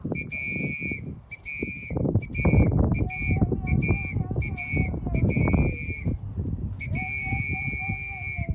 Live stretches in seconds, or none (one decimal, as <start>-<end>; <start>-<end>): 0.0-8.5